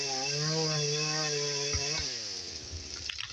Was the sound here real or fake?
real